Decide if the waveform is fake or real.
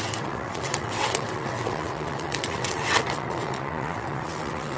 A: fake